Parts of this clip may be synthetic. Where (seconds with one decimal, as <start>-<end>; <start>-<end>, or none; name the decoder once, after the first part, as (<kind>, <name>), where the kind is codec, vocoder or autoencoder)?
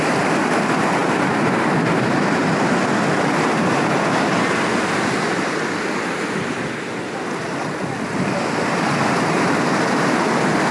none